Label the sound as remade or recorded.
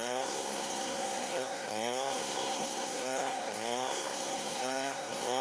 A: remade